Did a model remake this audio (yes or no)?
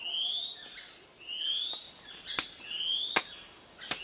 no